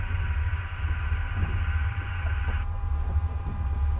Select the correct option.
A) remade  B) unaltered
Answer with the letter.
A